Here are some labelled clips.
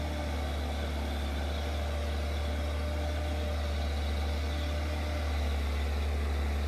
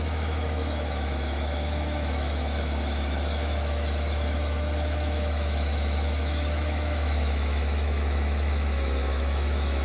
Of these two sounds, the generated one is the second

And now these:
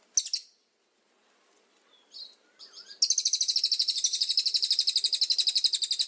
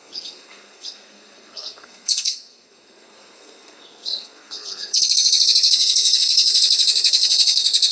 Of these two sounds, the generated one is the second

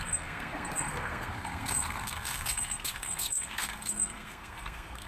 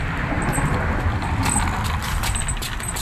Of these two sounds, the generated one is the first